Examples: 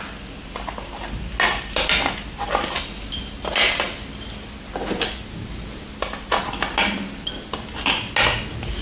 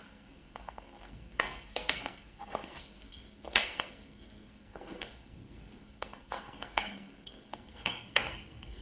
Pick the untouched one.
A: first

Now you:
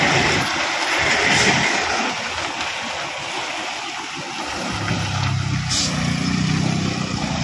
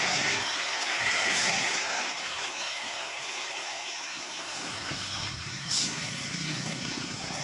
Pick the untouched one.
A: first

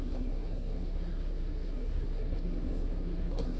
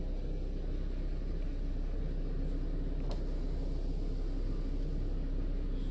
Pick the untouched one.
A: second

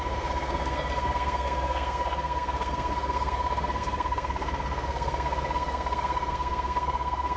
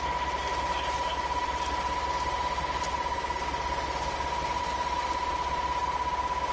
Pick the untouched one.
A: second